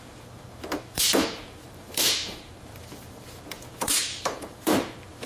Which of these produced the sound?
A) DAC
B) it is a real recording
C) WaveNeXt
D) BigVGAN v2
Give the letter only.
D